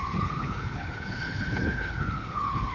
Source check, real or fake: fake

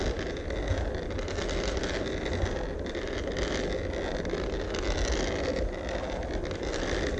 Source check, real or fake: real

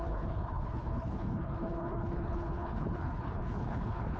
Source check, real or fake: fake